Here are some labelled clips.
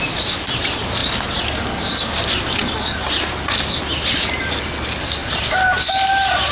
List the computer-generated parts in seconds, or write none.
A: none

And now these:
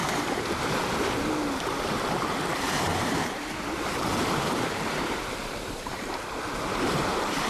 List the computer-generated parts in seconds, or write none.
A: 0.0-0.7 (vocoder, BigVGAN v2); 2.9-7.5

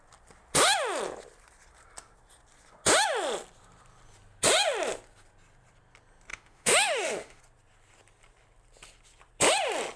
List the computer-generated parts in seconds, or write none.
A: 6.3-7.4 (autoencoder, DAC-VAE)

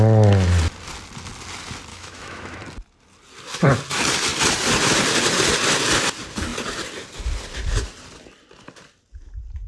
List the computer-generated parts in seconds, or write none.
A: 1.9-2.6 (autoencoder, DAC-VAE)

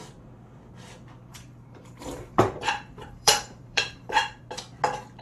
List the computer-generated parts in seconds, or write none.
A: 1.3-4.4 (vocoder, BigVGAN v2)

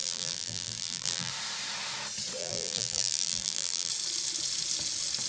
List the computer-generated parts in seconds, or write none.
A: 0.0-1.3 (vocoder, BigVGAN v2); 2.4-3.9

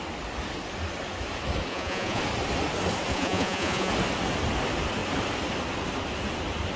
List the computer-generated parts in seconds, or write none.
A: 1.7-2.2 (vocoder, Vocos); 3.1-3.9